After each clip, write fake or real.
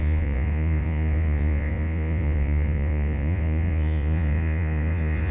fake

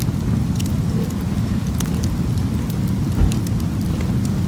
real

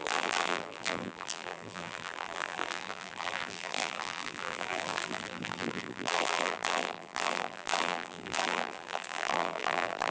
fake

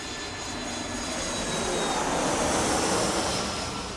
real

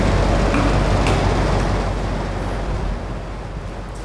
real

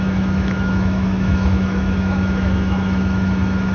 fake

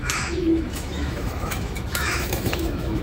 fake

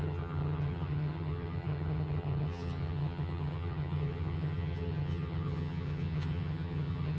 fake